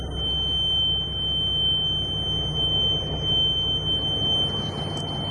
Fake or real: real